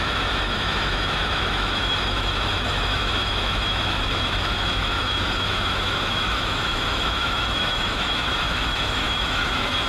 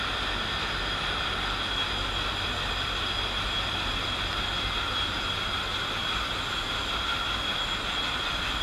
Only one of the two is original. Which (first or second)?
second